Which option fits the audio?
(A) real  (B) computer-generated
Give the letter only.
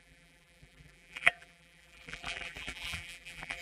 B